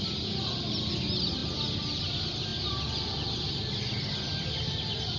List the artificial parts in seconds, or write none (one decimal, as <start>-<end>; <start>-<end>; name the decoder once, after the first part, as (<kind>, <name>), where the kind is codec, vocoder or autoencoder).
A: none